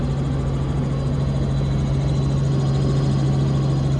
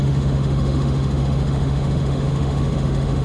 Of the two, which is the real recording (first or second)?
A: first